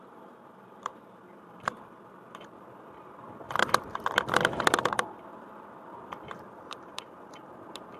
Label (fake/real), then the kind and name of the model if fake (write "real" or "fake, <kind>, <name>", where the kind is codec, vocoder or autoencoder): fake, vocoder, BigVGAN v2